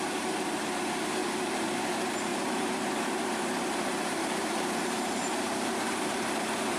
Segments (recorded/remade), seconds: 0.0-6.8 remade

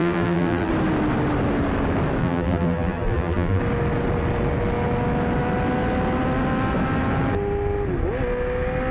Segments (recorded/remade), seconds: 0.0-0.7 remade; 0.7-2.2 recorded; 2.2-3.6 remade; 3.6-8.9 recorded

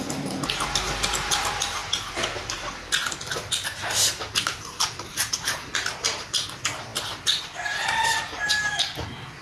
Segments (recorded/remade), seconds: 0.0-3.8 recorded; 3.8-5.7 remade; 5.7-9.4 recorded

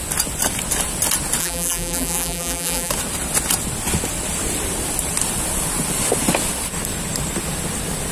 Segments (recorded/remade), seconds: 0.0-1.4 recorded; 1.4-2.9 remade; 2.9-8.1 recorded

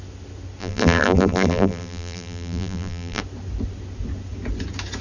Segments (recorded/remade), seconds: 0.0-0.6 recorded; 0.6-3.2 remade; 3.2-5.0 recorded

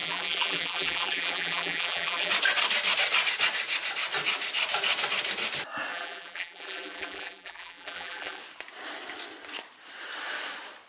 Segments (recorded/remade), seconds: 0.0-2.3 remade; 2.3-5.9 recorded; 5.9-8.4 remade; 8.4-10.9 recorded